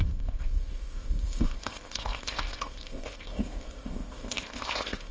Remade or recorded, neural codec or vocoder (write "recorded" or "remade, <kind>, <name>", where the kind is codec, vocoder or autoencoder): remade, codec, ZipCodec